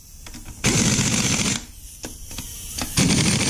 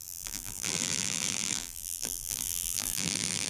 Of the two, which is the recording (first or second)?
first